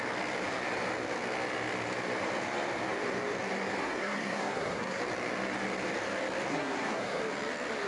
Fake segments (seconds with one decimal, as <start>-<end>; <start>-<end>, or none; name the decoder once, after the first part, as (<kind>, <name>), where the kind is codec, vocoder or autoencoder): 3.8-5.0 (codec, SNAC); 6.5-7.2